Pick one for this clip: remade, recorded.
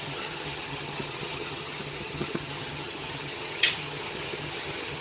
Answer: remade